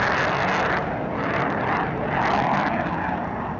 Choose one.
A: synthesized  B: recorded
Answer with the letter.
B